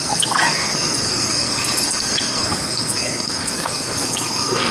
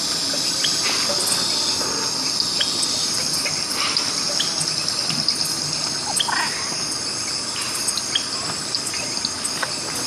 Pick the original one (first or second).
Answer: second